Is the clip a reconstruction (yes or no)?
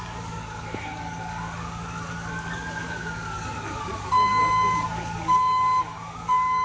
yes